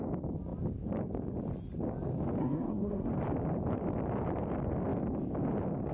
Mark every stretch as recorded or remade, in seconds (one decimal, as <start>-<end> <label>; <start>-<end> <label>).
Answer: 0.0-2.4 recorded; 2.4-3.1 remade; 3.1-5.9 recorded